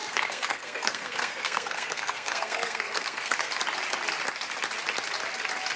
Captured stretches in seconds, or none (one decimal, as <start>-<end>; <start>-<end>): 3.5-5.8